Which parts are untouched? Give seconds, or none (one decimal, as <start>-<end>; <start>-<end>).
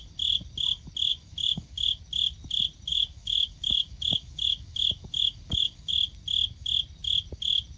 0.0-1.1; 2.0-2.9; 5.9-7.8